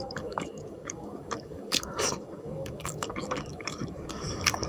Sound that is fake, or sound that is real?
fake